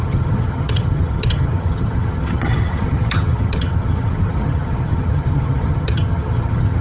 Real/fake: fake